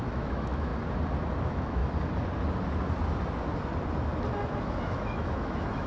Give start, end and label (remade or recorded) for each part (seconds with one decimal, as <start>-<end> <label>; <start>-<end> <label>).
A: 0.0-0.7 remade; 0.7-1.4 recorded; 1.4-1.8 remade; 1.8-4.6 recorded; 4.6-5.9 remade